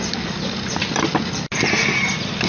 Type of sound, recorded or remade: recorded